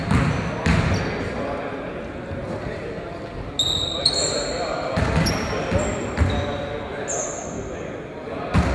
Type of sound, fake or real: real